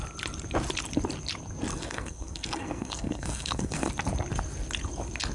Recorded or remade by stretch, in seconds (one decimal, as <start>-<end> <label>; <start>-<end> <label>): 0.0-1.7 recorded; 1.7-3.9 remade; 3.9-5.3 recorded